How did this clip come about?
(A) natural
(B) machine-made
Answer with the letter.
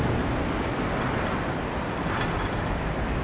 A